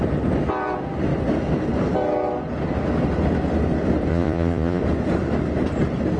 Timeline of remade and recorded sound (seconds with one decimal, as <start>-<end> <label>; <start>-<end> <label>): 0.0-4.1 recorded; 4.1-4.8 remade; 4.8-6.2 recorded